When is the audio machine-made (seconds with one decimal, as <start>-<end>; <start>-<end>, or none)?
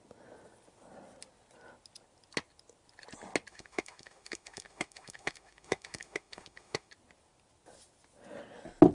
3.5-6.9